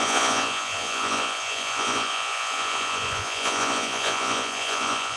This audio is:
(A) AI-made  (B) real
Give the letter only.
A